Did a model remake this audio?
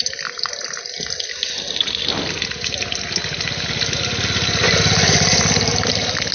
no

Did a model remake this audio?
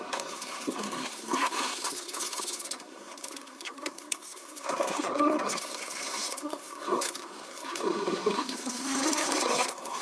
yes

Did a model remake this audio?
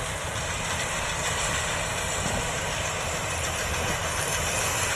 no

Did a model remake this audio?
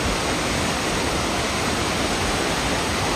no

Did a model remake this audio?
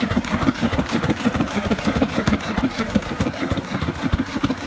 yes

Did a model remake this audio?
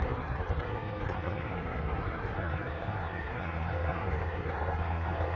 yes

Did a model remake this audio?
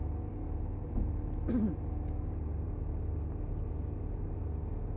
no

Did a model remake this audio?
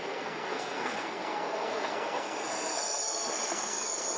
yes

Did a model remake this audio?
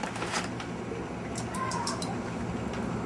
no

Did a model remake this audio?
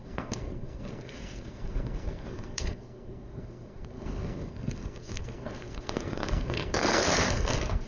yes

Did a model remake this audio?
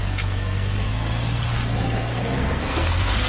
yes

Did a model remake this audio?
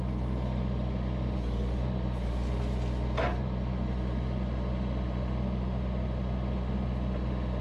no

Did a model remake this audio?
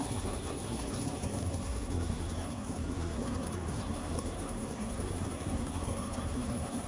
yes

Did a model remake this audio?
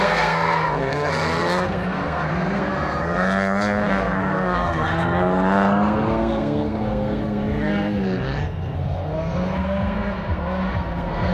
yes